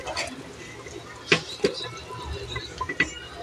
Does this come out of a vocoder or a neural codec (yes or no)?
no